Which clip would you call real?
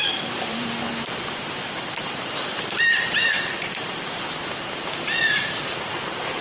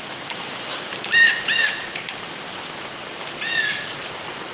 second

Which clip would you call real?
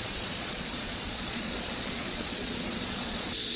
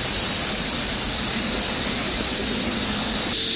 second